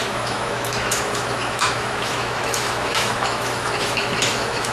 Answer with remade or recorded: remade